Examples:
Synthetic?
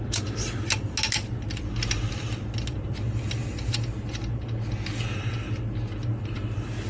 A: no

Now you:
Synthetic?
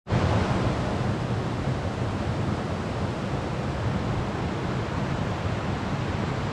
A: no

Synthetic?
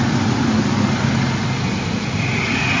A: no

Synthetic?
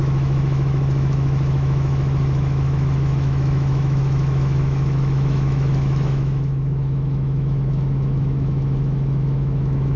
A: yes